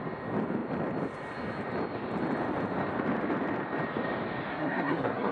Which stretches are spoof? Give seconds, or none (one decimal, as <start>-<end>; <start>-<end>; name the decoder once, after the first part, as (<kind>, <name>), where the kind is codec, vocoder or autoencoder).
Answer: 4.5-5.3 (codec, SNAC)